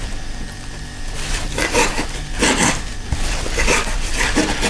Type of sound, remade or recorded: recorded